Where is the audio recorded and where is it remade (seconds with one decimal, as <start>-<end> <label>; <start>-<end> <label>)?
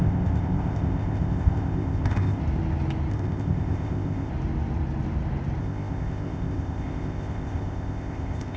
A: 0.0-2.4 remade; 2.4-3.1 recorded; 3.1-4.3 remade; 4.3-5.6 recorded; 5.6-8.6 remade